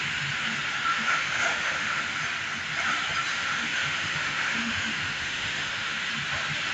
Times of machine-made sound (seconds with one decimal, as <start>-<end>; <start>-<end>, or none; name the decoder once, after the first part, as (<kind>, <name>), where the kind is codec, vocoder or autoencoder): 0.9-2.0 (autoencoder, DAC-VAE); 3.3-6.1

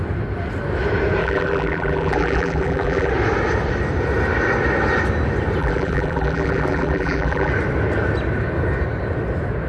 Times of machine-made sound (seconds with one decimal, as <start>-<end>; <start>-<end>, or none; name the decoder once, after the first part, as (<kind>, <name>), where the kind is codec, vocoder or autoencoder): 1.2-3.1 (vocoder, BigVGAN v2); 5.6-7.5